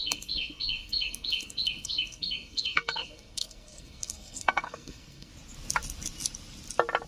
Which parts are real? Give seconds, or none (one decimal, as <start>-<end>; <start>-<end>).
5.3-7.1